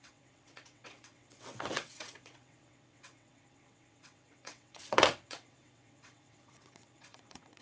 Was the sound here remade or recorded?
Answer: remade